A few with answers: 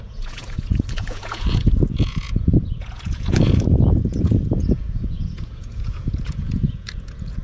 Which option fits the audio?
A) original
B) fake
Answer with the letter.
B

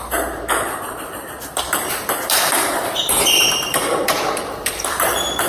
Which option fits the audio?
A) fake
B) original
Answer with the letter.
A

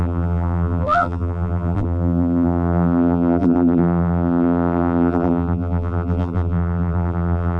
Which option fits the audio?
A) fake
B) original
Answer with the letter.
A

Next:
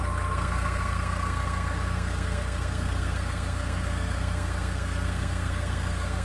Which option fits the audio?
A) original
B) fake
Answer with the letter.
B